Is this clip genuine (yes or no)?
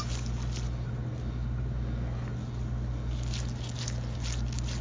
yes